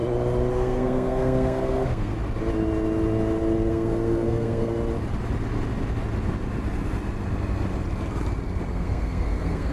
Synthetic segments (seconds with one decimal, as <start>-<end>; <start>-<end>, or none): 0.5-2.1; 3.7-4.7; 8.7-9.7